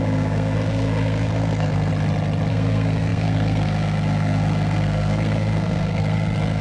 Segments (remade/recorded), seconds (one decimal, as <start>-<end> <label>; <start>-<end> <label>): 0.0-1.9 remade; 1.9-2.5 recorded; 2.5-6.6 remade